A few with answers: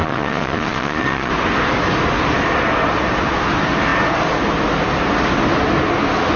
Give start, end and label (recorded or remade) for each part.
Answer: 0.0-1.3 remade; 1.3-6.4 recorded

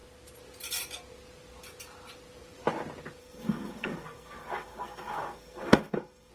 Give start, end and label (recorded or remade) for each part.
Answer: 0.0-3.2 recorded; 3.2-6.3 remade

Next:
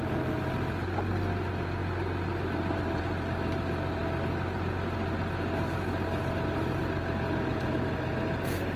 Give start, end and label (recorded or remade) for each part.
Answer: 0.0-1.8 recorded; 1.8-3.0 remade; 3.0-8.8 recorded

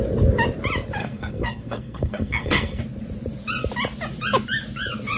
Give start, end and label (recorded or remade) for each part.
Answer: 0.0-1.0 recorded; 1.0-2.8 remade; 2.8-5.2 recorded